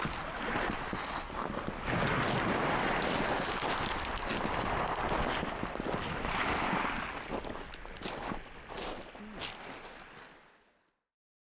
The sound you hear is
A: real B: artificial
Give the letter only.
A